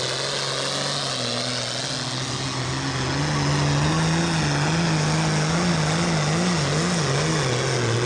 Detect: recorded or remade recorded